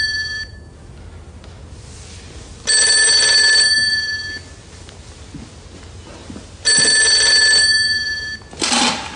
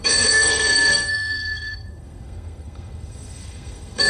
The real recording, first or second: first